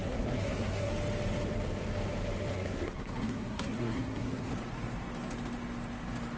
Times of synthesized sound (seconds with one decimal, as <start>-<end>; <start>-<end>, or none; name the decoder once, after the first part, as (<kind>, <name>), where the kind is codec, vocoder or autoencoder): 0.0-0.9 (codec, SNAC); 2.5-4.5